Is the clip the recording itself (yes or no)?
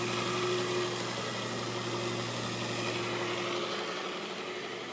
yes